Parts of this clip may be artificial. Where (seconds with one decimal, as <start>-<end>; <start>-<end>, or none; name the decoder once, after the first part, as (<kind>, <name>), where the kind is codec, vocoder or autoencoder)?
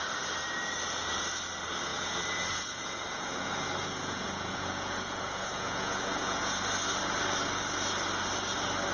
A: 1.9-6.6 (vocoder, Vocos)